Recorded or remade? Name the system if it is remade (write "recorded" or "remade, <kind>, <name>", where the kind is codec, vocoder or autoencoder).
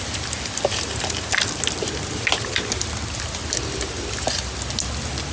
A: recorded